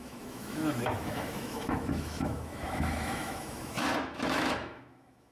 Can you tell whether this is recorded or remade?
remade